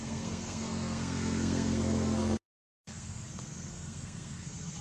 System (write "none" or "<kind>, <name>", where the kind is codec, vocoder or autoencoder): codec, SNAC